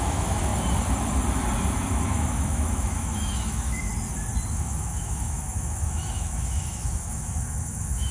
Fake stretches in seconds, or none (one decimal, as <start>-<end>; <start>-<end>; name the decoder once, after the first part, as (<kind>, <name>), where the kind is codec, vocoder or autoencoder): 0.0-0.5 (autoencoder, DAC-VAE); 1.9-3.9; 4.5-8.1